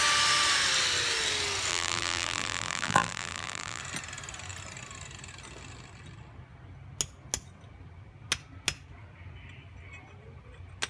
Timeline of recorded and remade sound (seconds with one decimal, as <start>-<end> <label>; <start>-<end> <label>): 0.0-1.7 recorded; 1.7-3.8 remade; 3.8-10.9 recorded